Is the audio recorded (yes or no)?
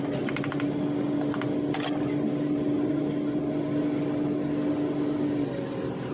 yes